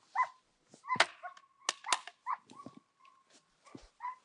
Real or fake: real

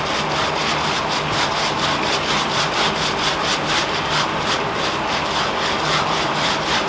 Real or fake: real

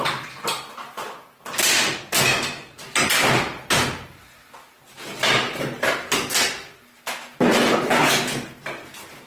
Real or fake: real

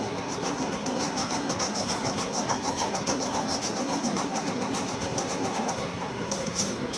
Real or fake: fake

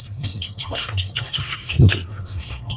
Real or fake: fake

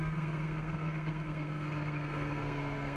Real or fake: fake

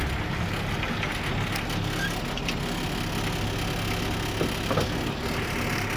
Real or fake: real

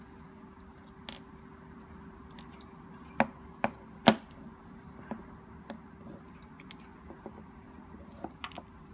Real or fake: real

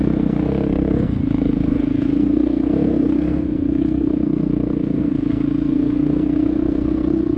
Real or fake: fake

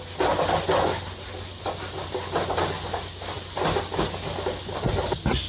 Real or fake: real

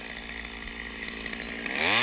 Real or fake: real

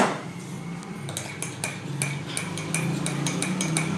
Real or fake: real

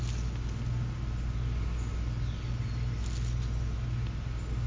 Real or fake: real